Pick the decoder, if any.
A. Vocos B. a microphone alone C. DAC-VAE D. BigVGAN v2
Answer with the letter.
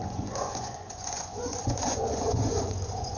A